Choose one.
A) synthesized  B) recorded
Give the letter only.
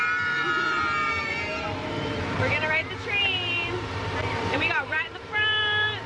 A